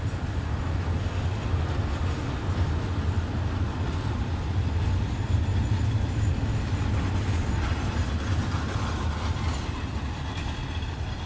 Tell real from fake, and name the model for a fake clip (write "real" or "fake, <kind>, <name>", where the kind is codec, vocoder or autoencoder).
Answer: real